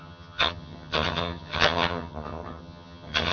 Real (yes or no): no